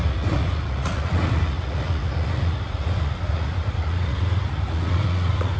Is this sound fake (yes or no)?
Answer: yes